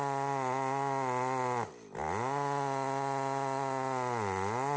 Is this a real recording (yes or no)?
yes